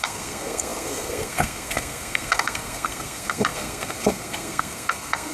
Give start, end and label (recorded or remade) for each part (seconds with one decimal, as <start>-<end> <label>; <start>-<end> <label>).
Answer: 0.0-5.3 remade

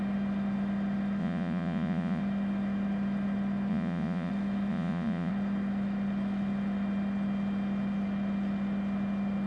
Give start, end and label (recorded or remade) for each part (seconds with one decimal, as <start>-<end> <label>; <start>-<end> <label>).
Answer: 0.0-1.2 recorded; 1.2-2.2 remade; 2.2-3.7 recorded; 3.7-4.3 remade; 4.3-4.7 recorded; 4.7-5.3 remade; 5.3-9.5 recorded

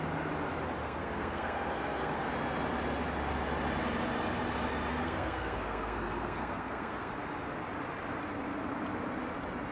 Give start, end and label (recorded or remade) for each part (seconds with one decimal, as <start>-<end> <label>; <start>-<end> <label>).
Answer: 0.0-0.8 recorded; 0.8-2.3 remade; 2.3-4.9 recorded; 4.9-7.1 remade; 7.1-9.7 recorded

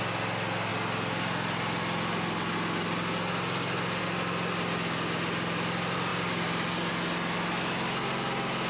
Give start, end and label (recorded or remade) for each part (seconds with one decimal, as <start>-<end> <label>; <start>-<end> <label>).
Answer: 0.0-8.7 recorded

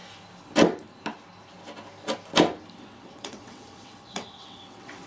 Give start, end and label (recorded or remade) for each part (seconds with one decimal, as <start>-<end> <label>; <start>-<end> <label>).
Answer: 0.0-2.8 recorded; 2.8-5.1 remade

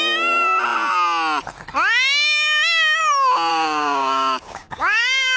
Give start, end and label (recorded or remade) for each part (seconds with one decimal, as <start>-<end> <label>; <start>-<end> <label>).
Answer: 0.0-3.5 recorded; 3.5-5.4 remade

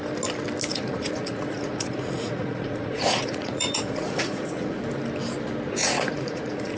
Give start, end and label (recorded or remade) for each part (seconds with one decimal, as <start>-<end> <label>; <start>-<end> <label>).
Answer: 0.0-0.7 recorded; 0.7-4.8 remade; 4.8-5.8 recorded; 5.8-6.8 remade